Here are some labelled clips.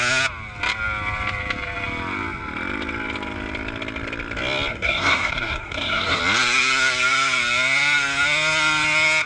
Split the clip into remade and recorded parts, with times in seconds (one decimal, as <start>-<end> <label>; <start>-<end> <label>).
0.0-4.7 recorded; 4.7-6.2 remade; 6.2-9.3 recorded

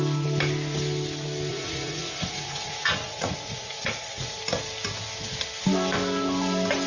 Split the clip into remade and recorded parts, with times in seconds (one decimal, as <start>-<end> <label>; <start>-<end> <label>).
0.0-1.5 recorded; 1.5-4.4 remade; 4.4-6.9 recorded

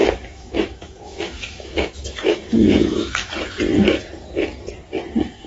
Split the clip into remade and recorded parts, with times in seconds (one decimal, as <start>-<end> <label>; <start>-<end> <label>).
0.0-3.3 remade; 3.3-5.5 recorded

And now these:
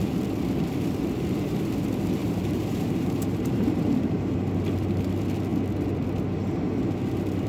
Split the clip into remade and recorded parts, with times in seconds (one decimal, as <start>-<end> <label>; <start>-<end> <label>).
0.0-2.2 recorded; 2.2-4.2 remade; 4.2-7.5 recorded

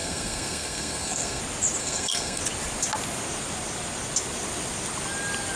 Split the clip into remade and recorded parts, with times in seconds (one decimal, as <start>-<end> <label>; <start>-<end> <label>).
0.0-1.4 remade; 1.4-1.8 recorded; 1.8-2.4 remade; 2.4-5.6 recorded

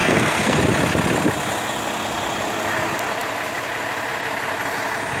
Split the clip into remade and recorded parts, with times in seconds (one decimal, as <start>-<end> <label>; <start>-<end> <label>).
0.0-0.6 remade; 0.6-5.2 recorded

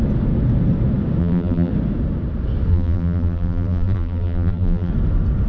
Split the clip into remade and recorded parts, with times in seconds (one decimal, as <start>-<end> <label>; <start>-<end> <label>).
0.0-1.2 recorded; 1.2-1.7 remade; 1.7-2.7 recorded; 2.7-4.9 remade; 4.9-5.5 recorded